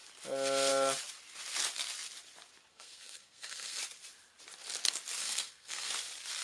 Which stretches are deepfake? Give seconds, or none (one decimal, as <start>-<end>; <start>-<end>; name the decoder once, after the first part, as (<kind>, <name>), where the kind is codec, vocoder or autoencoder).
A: 2.7-3.8 (codec, SNAC); 5.2-5.9